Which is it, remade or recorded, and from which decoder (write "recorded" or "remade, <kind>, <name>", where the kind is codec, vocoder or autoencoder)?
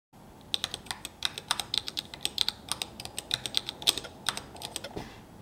recorded